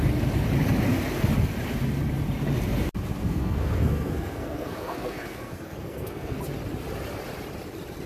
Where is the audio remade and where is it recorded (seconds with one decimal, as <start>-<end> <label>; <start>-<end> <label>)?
0.0-3.2 recorded; 3.2-6.4 remade; 6.4-8.1 recorded